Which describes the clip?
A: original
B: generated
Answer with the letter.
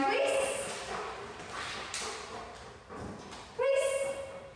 A